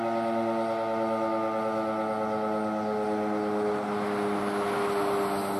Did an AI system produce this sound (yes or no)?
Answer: no